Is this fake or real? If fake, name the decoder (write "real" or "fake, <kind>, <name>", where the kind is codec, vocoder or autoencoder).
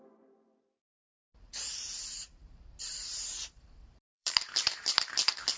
fake, vocoder, BigVGAN v2